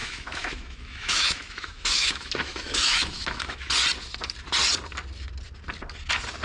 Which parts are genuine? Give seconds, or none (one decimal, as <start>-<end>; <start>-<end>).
3.7-6.4